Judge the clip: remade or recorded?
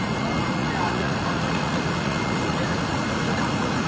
remade